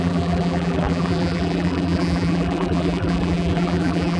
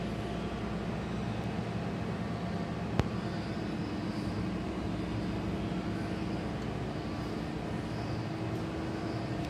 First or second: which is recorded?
second